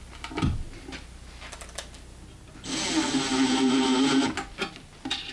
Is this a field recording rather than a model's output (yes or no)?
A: yes